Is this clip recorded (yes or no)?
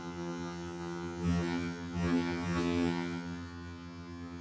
no